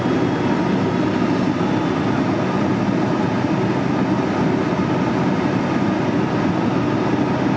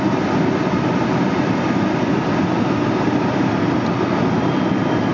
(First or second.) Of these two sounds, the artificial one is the second